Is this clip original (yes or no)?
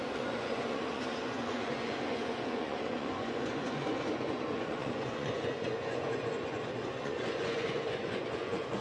no